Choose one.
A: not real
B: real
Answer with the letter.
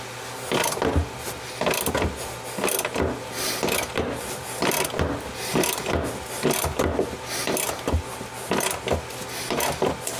B